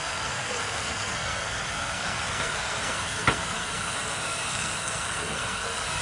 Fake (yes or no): yes